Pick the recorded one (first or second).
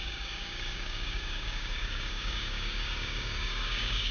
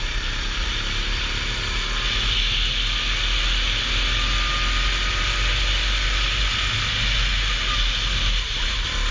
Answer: second